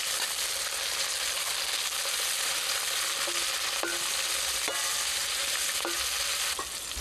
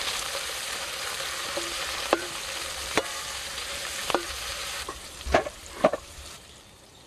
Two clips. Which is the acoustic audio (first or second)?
first